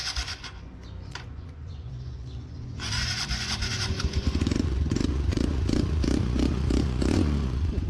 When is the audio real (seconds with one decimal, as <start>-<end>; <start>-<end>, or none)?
none